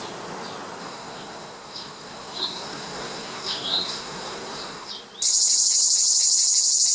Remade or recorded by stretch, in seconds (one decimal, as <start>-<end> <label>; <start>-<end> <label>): 0.0-0.8 recorded; 0.8-4.9 remade; 4.9-6.9 recorded